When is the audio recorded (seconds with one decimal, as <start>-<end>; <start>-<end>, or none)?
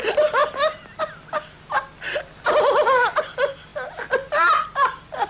0.0-5.3